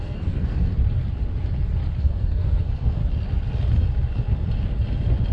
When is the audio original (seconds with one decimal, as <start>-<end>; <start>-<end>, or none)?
0.7-2.0; 3.0-5.3